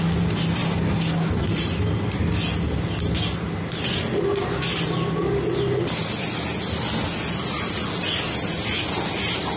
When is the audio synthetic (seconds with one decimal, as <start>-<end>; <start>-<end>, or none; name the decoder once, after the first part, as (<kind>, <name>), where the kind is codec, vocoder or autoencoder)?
none